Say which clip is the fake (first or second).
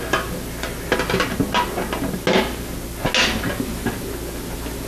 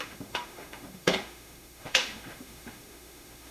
second